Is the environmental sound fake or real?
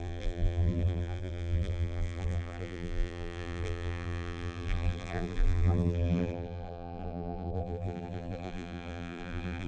fake